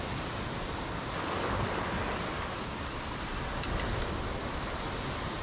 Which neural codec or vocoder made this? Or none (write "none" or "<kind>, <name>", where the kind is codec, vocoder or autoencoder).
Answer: none